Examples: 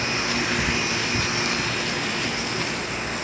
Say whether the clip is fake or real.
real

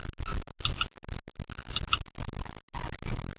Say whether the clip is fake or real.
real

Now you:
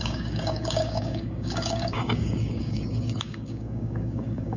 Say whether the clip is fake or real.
fake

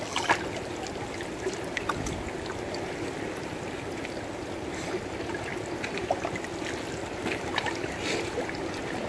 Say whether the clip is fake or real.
real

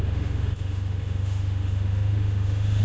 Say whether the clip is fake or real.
fake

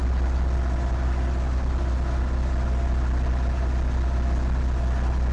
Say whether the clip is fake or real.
real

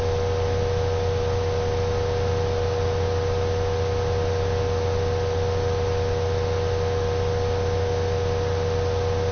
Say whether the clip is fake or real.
real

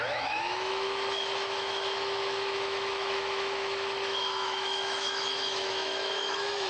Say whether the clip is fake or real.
fake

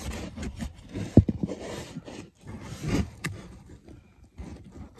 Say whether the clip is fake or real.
real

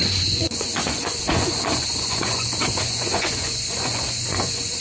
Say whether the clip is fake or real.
fake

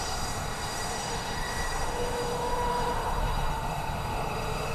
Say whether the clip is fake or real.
fake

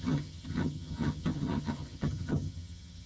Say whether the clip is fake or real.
fake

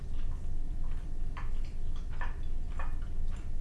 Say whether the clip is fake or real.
real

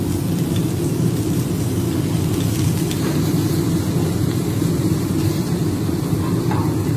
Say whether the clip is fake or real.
real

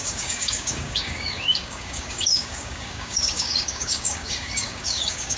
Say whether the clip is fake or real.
fake